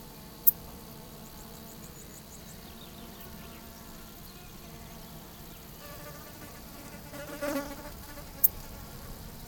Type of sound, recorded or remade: remade